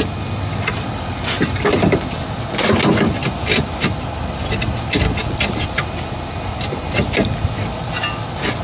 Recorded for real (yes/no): yes